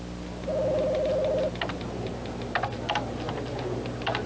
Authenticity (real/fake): real